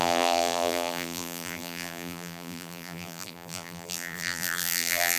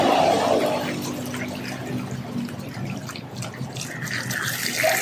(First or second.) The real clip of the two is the second